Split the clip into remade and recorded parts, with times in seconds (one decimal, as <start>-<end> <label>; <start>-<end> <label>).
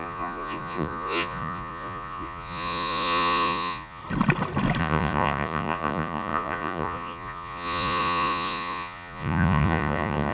0.0-4.0 remade; 4.0-4.8 recorded; 4.8-10.3 remade